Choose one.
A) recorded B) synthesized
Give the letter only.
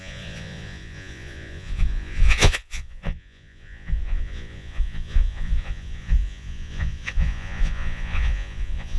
B